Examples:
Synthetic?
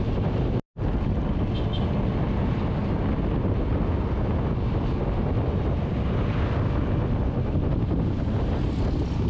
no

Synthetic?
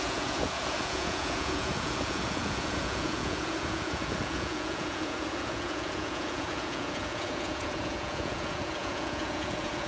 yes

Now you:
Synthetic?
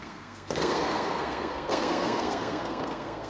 yes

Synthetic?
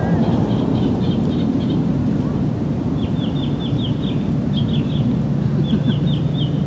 no